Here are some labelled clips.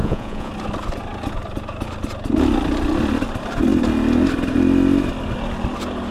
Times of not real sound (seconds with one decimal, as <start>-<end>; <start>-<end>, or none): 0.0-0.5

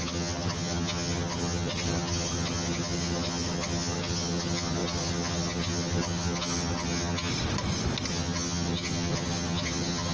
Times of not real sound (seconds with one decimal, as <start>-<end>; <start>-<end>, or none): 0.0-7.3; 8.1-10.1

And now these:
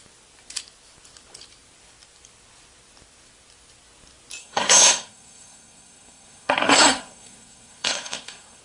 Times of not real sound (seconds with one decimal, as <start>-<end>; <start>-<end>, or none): 4.4-8.6

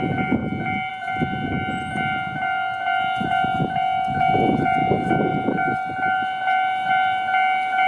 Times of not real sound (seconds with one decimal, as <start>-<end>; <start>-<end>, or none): none